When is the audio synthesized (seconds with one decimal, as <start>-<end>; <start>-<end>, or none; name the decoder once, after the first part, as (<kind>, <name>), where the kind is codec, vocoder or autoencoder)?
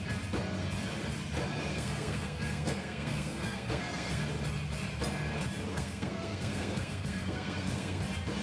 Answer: 1.7-4.2 (codec, SNAC); 5.7-8.0